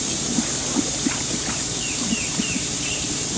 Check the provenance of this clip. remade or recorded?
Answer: remade